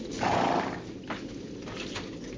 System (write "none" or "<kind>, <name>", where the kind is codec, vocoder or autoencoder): none